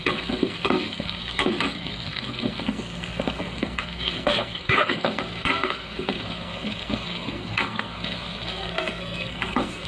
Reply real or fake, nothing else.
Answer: fake